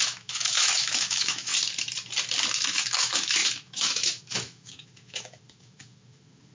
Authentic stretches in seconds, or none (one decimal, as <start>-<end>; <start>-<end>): 1.5-2.6